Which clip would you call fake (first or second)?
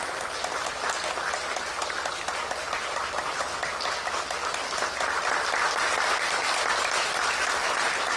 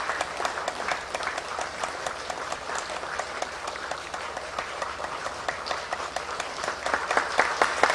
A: second